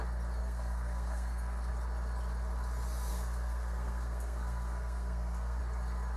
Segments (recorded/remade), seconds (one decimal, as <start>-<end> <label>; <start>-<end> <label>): 0.0-0.4 recorded; 0.4-1.7 remade; 1.7-3.1 recorded; 3.1-5.6 remade; 5.6-6.2 recorded